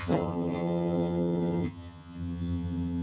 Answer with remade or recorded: remade